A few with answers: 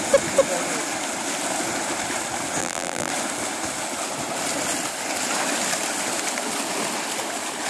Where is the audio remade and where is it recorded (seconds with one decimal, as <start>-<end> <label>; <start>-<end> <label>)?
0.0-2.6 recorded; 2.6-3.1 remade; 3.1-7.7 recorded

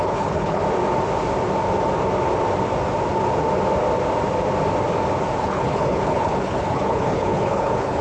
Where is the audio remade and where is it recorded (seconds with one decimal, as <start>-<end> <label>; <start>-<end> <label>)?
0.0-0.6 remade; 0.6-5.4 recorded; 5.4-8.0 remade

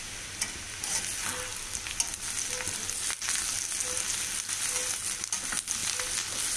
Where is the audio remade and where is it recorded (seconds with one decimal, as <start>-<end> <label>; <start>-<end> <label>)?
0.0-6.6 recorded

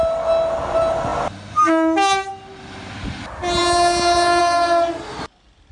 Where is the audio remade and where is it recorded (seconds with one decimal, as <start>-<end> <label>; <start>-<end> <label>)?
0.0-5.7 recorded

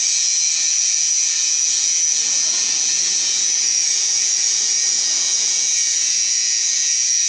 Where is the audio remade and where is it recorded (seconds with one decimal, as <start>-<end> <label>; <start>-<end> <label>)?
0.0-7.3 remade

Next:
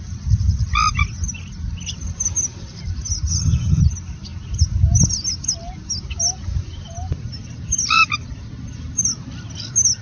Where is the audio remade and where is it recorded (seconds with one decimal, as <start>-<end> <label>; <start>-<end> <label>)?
0.0-3.3 recorded; 3.3-3.8 remade; 3.8-10.0 recorded